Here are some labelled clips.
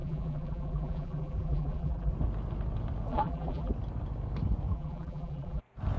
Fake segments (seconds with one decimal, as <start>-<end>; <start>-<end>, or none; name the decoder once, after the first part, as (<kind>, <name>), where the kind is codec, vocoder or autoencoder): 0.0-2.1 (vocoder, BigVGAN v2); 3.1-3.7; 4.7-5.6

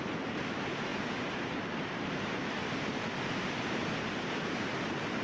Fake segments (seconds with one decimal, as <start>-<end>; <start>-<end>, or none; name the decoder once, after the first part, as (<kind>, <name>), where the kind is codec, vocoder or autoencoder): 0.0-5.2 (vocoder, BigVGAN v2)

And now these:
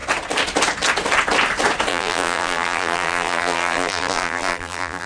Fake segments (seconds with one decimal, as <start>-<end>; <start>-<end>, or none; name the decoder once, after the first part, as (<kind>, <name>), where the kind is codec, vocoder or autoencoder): 1.9-5.1 (vocoder, BigVGAN v2)

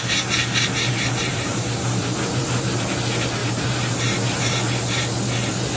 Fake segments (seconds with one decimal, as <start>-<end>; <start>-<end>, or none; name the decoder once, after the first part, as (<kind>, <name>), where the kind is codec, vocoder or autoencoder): 1.3-2.4 (vocoder, BigVGAN v2); 3.4-4.4

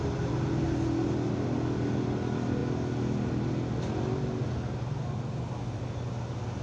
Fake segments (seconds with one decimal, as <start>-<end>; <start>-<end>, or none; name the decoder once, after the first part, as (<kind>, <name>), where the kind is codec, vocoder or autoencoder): none

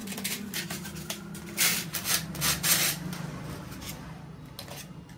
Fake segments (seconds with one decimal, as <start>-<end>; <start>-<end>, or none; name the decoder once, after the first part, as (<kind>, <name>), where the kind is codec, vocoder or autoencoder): none